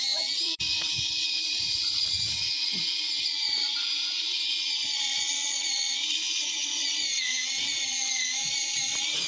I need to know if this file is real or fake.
fake